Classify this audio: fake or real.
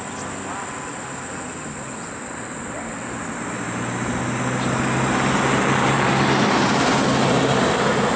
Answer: real